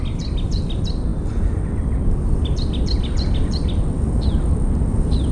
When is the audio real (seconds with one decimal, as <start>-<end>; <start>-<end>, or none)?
0.0-5.3